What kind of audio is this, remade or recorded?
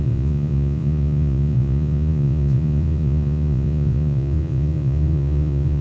remade